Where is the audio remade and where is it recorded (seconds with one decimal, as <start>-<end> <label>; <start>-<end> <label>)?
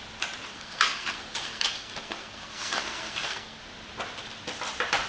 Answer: 0.0-0.5 recorded; 0.5-3.6 remade; 3.6-5.1 recorded